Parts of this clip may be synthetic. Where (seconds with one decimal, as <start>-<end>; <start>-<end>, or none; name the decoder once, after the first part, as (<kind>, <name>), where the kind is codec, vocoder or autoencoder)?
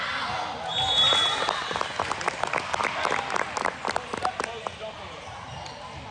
none